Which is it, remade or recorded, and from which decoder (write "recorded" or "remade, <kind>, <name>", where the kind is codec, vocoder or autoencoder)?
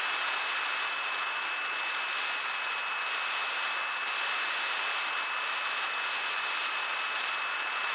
recorded